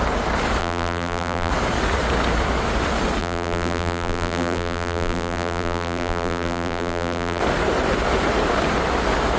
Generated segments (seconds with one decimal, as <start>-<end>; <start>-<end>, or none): 0.6-1.5; 3.2-7.4